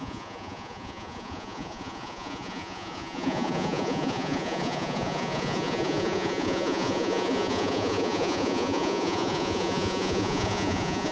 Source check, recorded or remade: remade